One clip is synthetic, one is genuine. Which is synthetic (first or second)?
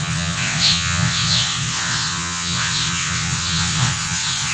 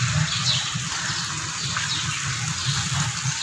first